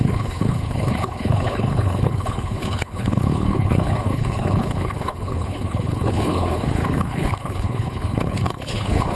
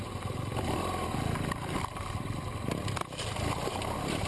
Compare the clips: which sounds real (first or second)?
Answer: second